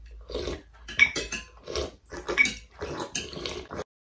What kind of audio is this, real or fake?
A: real